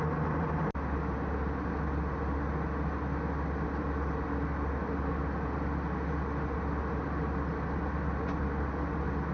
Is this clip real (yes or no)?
yes